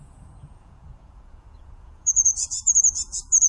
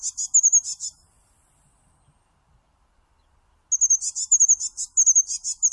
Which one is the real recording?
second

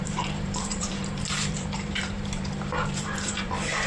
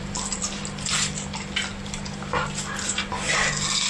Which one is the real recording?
second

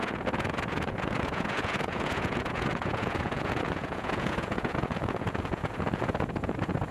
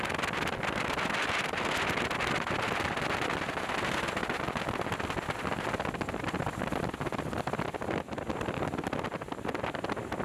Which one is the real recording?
second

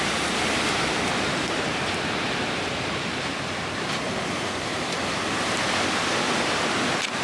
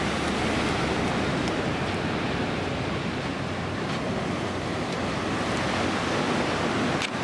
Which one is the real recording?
second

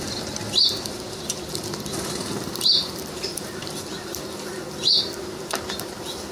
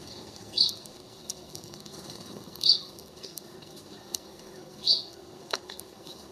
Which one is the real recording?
first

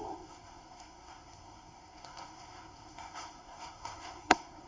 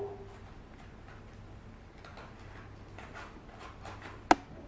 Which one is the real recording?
second